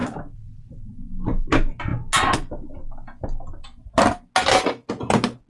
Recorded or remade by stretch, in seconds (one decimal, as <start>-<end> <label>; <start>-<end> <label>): 0.0-1.4 remade; 1.4-5.5 recorded

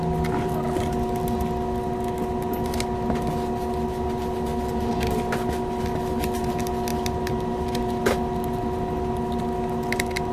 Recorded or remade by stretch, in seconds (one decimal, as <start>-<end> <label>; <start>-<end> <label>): 0.0-10.3 recorded

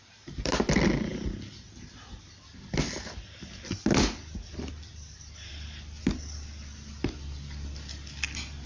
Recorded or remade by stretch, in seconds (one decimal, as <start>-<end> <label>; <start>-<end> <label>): 0.0-0.5 remade; 0.5-8.7 recorded

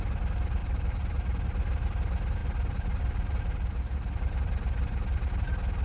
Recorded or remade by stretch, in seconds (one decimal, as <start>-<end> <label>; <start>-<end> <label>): 0.0-0.6 recorded; 0.6-1.6 remade; 1.6-2.4 recorded; 2.4-5.3 remade; 5.3-5.8 recorded

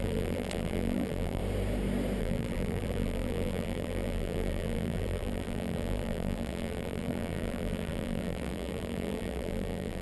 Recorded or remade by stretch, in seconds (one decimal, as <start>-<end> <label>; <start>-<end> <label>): 0.0-1.4 remade; 1.4-2.2 recorded; 2.2-10.0 remade

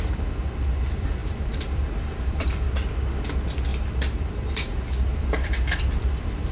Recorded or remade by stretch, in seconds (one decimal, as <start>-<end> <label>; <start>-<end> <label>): 0.0-1.2 recorded; 1.2-2.7 remade; 2.7-3.7 recorded; 3.7-5.8 remade; 5.8-6.5 recorded

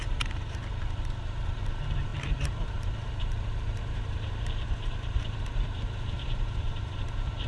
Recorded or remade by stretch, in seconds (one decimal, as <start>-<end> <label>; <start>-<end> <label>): 0.0-7.5 remade